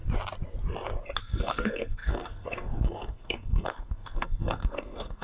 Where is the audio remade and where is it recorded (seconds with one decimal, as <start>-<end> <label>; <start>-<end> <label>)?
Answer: 0.0-1.2 recorded; 1.2-5.2 remade